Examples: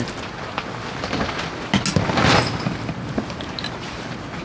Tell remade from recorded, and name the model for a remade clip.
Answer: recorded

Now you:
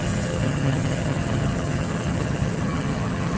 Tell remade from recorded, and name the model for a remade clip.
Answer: remade, vocoder, HiFi-GAN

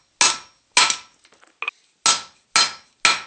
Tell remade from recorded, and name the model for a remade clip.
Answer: recorded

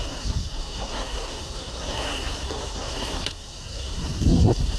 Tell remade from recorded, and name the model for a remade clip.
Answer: remade, codec, SNAC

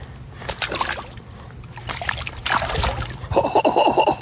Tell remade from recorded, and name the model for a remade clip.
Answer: recorded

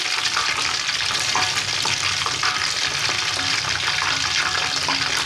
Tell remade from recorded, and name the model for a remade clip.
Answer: recorded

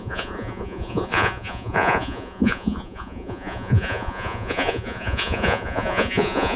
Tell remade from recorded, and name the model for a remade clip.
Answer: remade, vocoder, Vocos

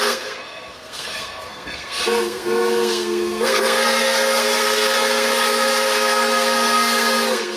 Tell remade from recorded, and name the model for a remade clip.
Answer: remade, codec, SNAC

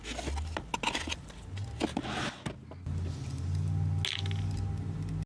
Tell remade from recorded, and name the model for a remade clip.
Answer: recorded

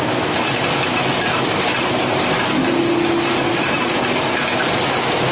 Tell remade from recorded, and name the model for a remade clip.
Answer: recorded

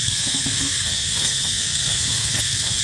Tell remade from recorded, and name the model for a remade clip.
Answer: remade, codec, SNAC